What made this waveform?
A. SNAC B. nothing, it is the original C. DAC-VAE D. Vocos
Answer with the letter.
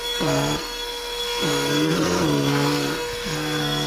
A